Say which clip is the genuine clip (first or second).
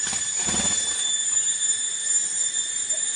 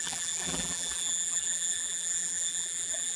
first